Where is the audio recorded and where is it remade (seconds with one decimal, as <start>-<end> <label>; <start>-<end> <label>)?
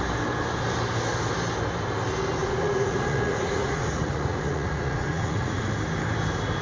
0.0-2.4 recorded; 2.4-5.7 remade; 5.7-6.6 recorded